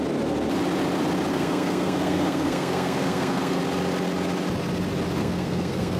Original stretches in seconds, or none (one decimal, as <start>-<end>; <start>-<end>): 0.0-1.3; 3.6-5.2